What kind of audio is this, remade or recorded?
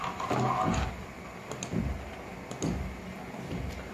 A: recorded